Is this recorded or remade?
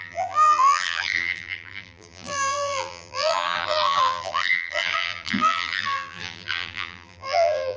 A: remade